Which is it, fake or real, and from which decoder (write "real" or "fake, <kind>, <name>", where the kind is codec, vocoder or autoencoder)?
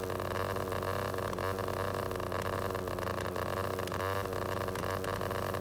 real